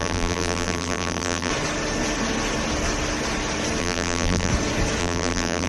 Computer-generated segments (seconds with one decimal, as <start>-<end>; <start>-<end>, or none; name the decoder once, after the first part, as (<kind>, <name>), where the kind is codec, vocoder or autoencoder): 0.0-1.5 (vocoder, BigVGAN v2); 3.8-4.5; 5.0-5.7